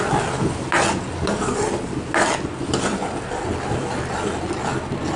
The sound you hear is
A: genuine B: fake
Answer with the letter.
A